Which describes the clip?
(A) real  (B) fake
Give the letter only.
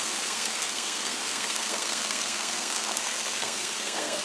B